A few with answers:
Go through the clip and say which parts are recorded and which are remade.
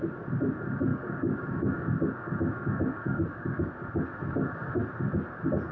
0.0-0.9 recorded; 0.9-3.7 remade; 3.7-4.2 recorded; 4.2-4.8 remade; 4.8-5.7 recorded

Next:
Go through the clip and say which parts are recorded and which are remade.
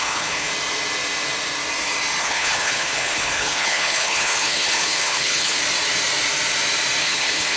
0.0-0.5 remade; 0.5-2.2 recorded; 2.2-5.6 remade; 5.6-7.0 recorded; 7.0-7.6 remade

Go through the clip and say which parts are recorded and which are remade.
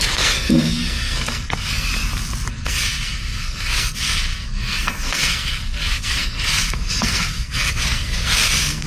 0.0-1.9 remade; 1.9-2.5 recorded; 2.5-8.9 remade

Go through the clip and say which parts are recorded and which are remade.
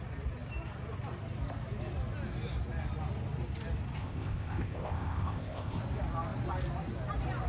0.0-4.0 recorded; 4.0-5.8 remade; 5.8-7.5 recorded